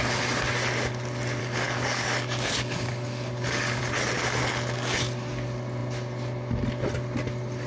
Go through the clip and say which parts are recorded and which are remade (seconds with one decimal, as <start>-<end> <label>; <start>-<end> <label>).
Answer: 0.0-1.4 recorded; 1.4-3.8 remade; 3.8-7.7 recorded